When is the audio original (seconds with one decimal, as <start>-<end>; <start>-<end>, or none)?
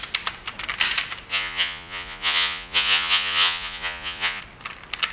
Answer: 0.0-1.3; 4.4-5.1